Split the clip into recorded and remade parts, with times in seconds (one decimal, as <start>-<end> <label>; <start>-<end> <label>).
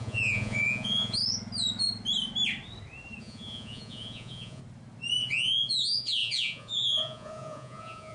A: 0.0-1.2 remade; 1.2-3.2 recorded; 3.2-4.6 remade; 4.6-5.2 recorded; 5.2-8.1 remade